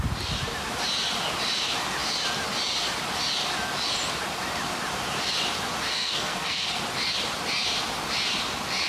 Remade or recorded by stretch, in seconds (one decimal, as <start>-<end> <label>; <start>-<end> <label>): 0.0-5.9 recorded; 5.9-6.8 remade; 6.8-8.9 recorded